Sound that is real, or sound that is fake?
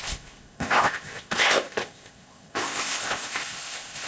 fake